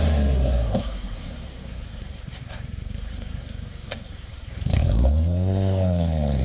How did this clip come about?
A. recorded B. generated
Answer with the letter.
B